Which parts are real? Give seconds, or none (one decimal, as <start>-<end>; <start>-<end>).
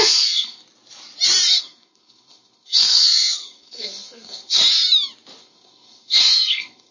0.6-1.6; 4.6-5.4